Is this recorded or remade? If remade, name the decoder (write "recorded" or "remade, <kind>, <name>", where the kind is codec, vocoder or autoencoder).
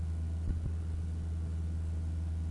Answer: recorded